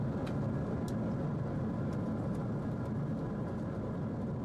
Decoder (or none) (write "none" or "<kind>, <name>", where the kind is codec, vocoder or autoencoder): none